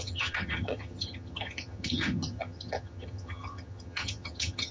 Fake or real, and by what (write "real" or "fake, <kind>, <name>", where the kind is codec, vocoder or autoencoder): fake, vocoder, HiFi-GAN